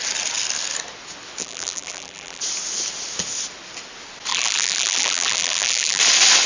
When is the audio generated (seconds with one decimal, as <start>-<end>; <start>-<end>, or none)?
1.4-2.4; 4.3-6.0